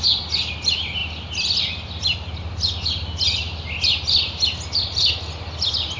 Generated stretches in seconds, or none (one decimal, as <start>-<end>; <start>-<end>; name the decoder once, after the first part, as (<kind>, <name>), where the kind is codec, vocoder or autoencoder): none